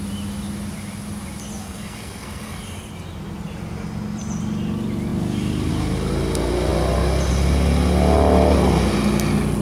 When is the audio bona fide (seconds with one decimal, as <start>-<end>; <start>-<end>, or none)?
0.0-1.6; 2.6-9.6